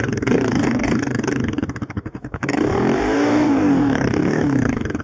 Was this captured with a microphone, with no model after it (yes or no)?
no